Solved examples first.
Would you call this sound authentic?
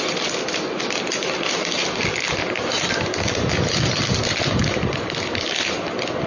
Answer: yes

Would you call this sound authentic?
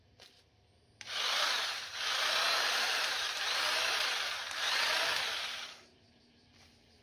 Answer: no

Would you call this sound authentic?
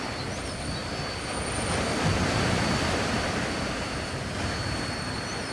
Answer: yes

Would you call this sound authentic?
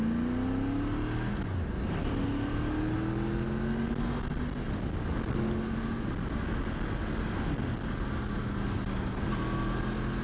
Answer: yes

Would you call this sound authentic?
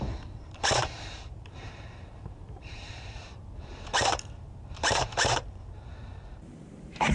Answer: no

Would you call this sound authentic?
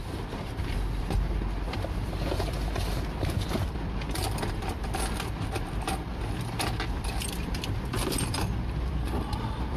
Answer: no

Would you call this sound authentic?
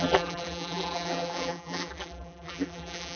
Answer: no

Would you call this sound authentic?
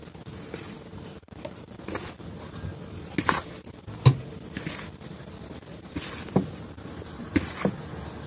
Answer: yes